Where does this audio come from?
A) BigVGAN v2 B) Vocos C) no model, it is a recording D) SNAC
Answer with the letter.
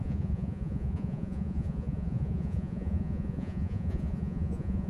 B